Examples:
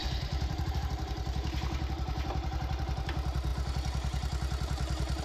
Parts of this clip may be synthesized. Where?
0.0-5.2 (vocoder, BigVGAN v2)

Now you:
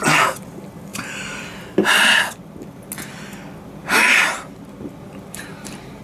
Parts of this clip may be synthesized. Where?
0.9-2.2 (vocoder, BigVGAN v2); 3.8-6.0